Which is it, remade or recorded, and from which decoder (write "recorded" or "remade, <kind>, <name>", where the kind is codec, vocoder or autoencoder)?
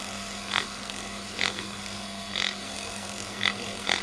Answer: remade, codec, SNAC